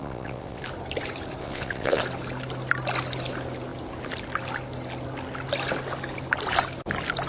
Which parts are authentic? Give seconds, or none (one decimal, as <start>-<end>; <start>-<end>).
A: 0.6-1.4; 2.0-7.3